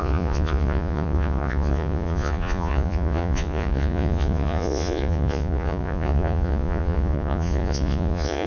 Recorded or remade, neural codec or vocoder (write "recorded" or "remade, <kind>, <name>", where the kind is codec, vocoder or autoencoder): remade, vocoder, Vocos